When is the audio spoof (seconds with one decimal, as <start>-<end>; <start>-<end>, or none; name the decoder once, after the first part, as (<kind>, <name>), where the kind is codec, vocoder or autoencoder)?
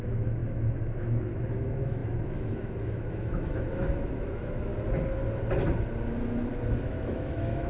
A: 0.0-4.7 (autoencoder, DAC-VAE); 6.8-7.7